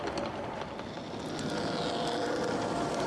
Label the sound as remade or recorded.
recorded